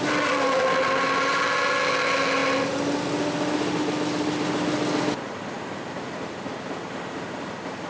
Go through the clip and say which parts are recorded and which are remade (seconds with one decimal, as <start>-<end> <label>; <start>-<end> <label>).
0.0-7.9 recorded